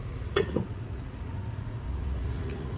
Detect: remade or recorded remade